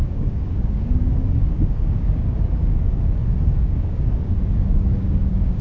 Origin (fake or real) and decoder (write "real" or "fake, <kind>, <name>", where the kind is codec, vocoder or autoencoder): fake, codec, DAC